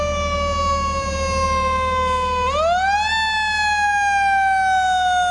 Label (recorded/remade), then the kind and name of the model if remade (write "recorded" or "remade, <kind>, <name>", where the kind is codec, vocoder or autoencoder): recorded